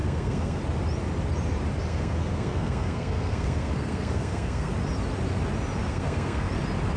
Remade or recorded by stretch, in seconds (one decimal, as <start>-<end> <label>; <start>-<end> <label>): 0.0-0.6 remade; 0.6-1.9 recorded; 1.9-4.7 remade; 4.7-5.9 recorded; 5.9-6.5 remade; 6.5-7.0 recorded

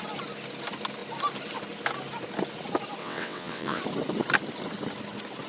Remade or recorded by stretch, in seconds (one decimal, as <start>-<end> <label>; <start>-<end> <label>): 0.0-3.0 recorded; 3.0-3.8 remade; 3.8-5.5 recorded

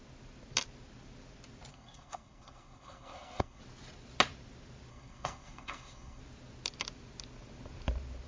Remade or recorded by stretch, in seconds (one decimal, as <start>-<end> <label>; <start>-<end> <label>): 0.0-1.7 recorded; 1.7-3.6 remade; 3.6-4.9 recorded; 4.9-6.2 remade; 6.2-8.3 recorded

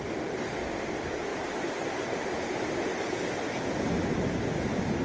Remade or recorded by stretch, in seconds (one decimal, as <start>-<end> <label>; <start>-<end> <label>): 0.0-1.3 recorded; 1.3-2.7 remade; 2.7-5.0 recorded

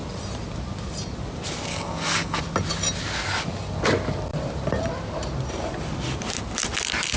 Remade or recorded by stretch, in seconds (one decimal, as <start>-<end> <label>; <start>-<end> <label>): 0.0-1.7 recorded; 1.7-2.4 remade; 2.4-7.2 recorded

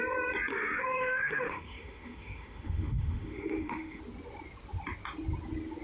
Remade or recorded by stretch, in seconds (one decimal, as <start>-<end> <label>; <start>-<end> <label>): 0.0-0.5 recorded; 0.5-4.0 remade; 4.0-5.8 recorded

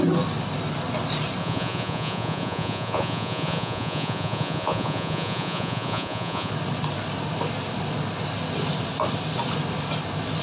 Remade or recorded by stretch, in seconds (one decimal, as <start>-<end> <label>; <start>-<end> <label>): 0.0-1.4 recorded; 1.4-6.5 remade; 6.5-10.4 recorded